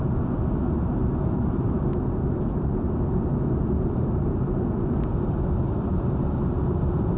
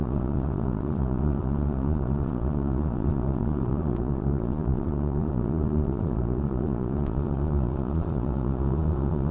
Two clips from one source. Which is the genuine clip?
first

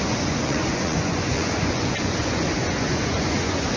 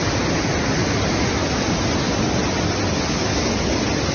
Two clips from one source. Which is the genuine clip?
second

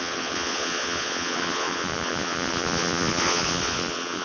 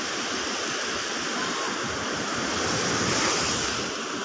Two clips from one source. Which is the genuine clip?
second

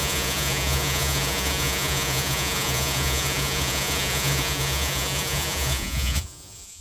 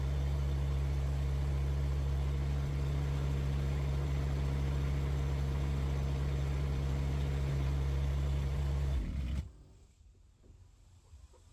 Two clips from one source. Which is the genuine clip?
second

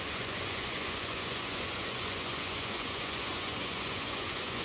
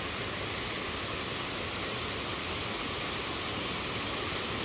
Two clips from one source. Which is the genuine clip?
second